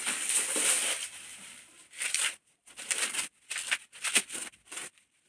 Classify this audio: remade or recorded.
remade